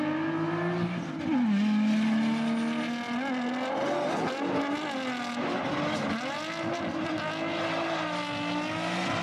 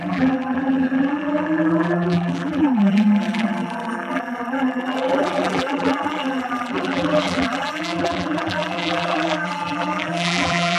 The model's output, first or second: second